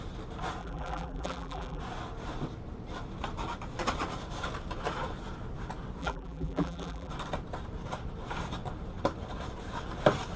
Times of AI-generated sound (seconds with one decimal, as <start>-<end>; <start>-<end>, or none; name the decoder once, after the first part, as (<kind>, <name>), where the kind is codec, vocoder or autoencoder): 0.6-1.8 (vocoder, BigVGAN v2); 6.0-7.1